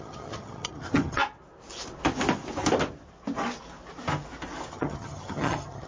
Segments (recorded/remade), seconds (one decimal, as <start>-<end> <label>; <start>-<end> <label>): 0.0-1.2 remade; 1.2-4.7 recorded; 4.7-5.9 remade